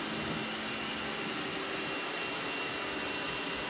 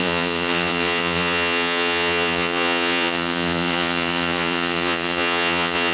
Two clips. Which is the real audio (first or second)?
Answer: first